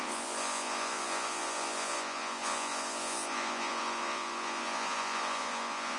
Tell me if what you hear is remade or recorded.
remade